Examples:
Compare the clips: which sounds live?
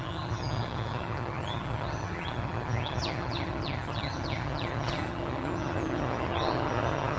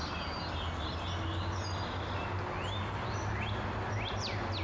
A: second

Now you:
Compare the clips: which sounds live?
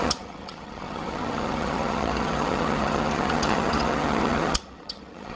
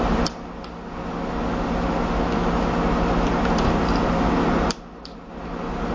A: second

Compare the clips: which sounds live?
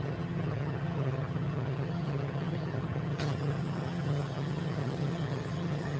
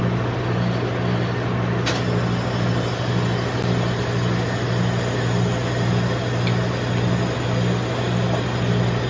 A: second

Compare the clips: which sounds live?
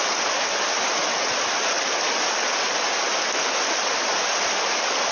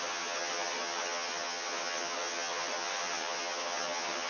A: first